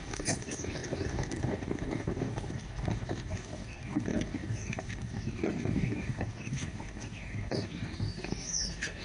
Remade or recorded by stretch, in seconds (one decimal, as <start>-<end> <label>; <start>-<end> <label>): 0.0-9.0 remade